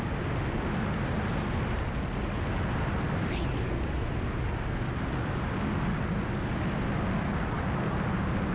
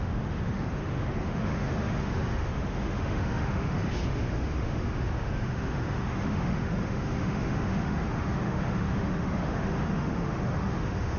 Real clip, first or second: first